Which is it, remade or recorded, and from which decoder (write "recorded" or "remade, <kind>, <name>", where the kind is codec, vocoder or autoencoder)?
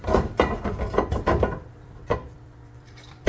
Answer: remade, vocoder, BigVGAN v2